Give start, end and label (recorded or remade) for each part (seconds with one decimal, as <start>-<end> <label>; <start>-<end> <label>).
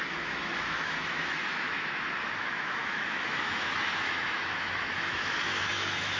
0.0-6.2 remade